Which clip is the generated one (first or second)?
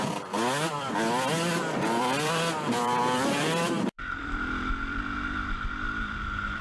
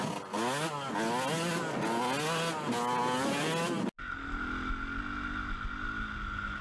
first